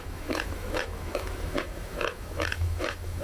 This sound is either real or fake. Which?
fake